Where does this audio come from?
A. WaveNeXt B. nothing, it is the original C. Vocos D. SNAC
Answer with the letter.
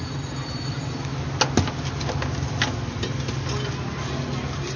B